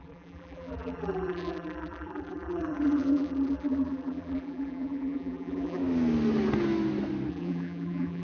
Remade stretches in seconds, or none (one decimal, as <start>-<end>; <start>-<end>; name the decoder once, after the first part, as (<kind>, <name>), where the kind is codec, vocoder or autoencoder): 0.0-5.8 (vocoder, BigVGAN v2); 7.3-8.2